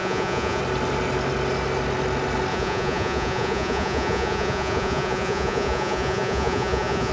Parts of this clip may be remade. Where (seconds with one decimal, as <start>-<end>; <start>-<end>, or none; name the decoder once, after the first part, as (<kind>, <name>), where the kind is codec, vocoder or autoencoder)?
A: 0.0-0.6 (vocoder, Vocos); 2.5-7.1

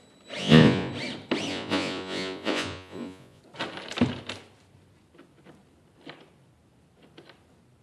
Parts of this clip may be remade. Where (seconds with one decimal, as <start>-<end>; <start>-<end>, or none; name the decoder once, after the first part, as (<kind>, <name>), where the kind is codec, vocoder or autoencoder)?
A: 0.4-0.9 (vocoder, Vocos); 1.5-3.4

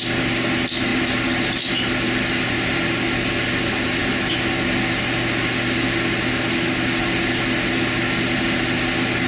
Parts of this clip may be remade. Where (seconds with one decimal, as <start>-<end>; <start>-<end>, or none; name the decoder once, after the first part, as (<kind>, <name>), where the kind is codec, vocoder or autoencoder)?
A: none

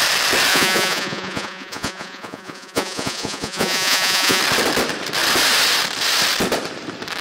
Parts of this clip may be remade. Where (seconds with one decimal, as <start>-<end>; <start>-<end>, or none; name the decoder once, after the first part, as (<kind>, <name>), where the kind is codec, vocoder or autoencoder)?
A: 0.5-4.4 (vocoder, Vocos)

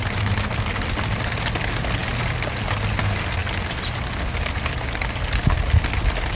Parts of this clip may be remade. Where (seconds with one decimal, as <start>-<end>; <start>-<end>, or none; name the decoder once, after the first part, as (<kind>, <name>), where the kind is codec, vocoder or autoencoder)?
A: none

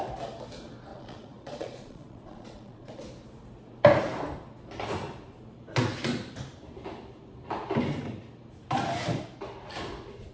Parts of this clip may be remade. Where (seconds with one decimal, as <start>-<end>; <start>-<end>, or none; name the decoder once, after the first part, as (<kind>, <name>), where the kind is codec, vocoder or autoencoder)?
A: 0.9-3.0 (vocoder, Vocos)

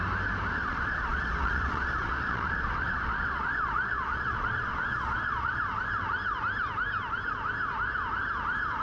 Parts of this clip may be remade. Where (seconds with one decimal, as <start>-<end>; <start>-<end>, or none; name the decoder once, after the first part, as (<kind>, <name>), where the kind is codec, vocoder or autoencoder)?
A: 0.6-5.6 (vocoder, Vocos)

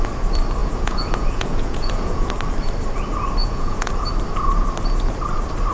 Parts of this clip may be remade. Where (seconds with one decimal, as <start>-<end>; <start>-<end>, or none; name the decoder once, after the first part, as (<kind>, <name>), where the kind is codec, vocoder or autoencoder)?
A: 0.6-2.3 (vocoder, Vocos); 3.4-3.9